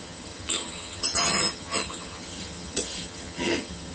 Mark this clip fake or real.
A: fake